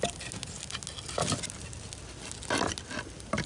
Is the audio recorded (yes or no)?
yes